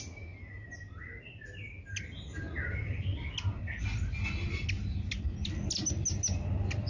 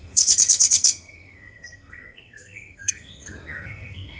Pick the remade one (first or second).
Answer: second